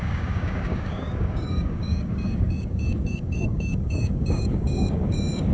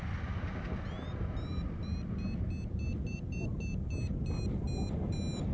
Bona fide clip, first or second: second